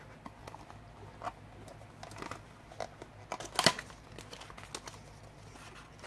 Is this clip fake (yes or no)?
no